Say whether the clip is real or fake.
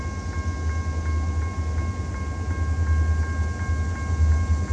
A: real